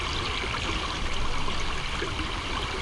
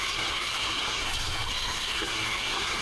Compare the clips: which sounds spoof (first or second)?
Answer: second